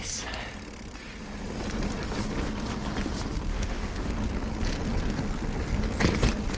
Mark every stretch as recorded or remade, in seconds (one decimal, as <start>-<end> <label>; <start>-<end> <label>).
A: 0.0-3.5 recorded; 3.5-4.1 remade; 4.1-6.6 recorded